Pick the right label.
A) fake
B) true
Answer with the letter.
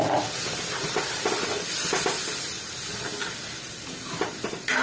B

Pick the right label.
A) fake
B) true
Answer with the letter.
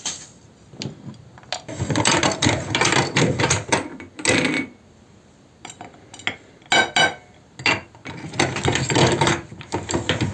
B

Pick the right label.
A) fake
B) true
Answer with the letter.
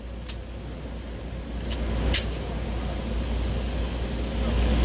B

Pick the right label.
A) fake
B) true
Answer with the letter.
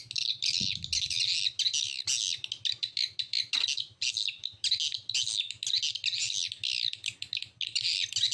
B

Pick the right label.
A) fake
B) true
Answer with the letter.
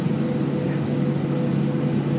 B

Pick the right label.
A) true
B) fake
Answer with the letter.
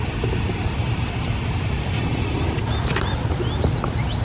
A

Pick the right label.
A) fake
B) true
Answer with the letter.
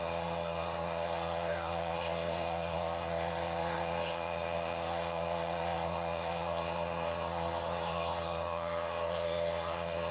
A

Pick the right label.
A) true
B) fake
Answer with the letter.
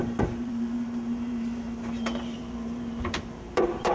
B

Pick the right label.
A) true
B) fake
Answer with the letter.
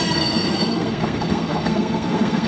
B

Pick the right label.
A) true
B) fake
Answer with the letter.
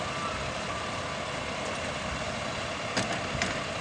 A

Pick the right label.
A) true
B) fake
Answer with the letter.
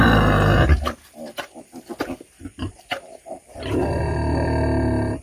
A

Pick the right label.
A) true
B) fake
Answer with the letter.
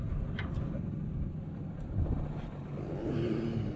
A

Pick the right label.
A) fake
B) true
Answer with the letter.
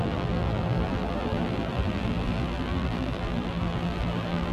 A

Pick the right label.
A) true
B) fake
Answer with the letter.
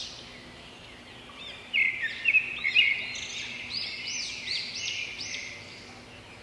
A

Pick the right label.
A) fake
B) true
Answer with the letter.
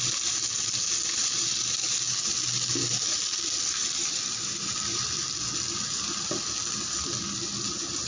B